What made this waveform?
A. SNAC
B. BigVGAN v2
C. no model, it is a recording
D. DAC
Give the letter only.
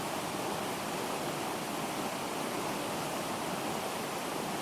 C